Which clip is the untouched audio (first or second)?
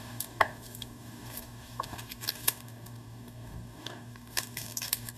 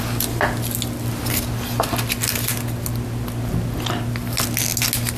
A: second